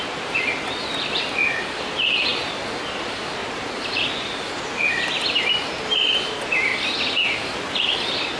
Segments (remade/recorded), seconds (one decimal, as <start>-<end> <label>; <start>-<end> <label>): 0.0-6.7 recorded; 6.7-7.5 remade; 7.5-8.4 recorded